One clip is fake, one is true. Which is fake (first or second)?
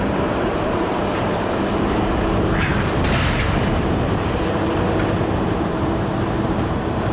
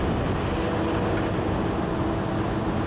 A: first